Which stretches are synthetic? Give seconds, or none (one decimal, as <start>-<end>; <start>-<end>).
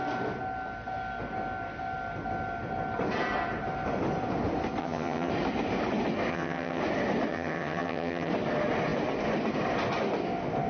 4.8-5.3; 6.3-6.8; 7.3-8.3